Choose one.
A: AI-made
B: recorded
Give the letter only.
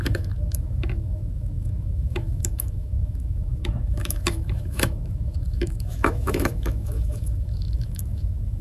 A